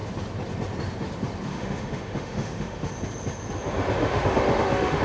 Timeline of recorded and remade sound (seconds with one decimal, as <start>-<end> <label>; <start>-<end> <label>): 0.0-1.5 recorded; 1.5-2.9 remade; 2.9-4.0 recorded; 4.0-5.0 remade